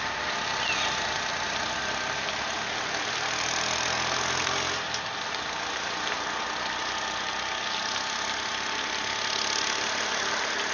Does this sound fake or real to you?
real